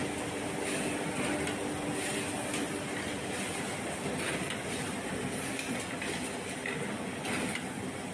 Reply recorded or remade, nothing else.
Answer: recorded